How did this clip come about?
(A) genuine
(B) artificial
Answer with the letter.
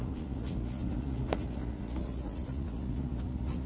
B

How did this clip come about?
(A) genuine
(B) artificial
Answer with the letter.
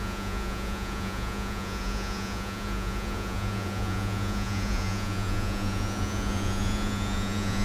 B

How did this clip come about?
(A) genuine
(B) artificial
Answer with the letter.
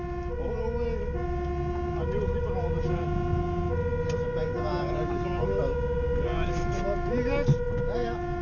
A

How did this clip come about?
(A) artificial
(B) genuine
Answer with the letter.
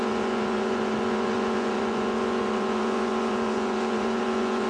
A